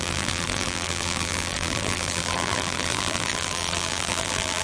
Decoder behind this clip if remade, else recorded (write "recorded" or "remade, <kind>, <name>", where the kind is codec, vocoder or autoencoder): remade, vocoder, BigVGAN v2